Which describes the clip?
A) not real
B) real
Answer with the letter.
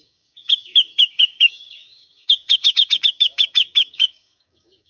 A